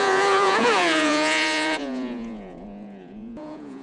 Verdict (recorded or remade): remade